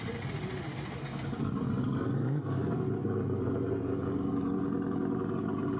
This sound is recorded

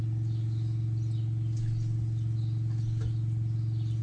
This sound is recorded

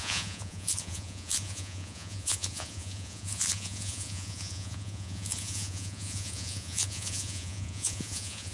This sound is remade